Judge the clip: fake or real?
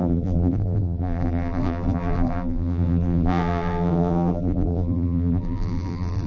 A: fake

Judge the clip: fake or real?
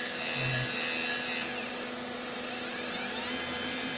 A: real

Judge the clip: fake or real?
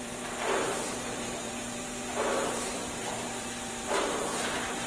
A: fake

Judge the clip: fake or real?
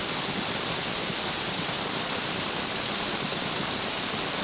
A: real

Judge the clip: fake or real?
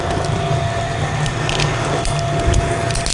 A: real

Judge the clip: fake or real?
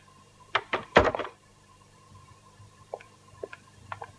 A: fake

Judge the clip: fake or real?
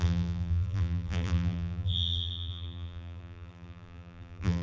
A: fake